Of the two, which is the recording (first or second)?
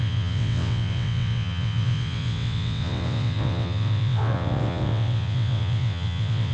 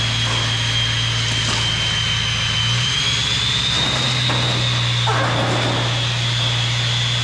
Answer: second